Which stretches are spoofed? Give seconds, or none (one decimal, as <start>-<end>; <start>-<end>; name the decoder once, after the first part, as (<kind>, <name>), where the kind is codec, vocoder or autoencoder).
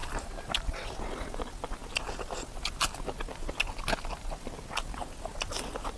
0.0-0.5 (vocoder, BigVGAN v2)